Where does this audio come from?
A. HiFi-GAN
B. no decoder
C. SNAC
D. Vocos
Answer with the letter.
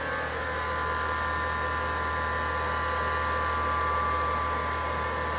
B